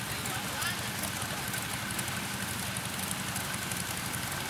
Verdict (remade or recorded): recorded